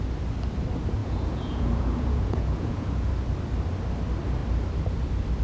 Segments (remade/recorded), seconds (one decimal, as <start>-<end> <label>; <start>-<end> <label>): 0.0-1.0 recorded; 1.0-3.1 remade; 3.1-5.4 recorded